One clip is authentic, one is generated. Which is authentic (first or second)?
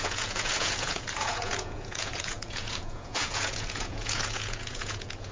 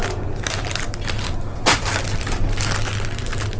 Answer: second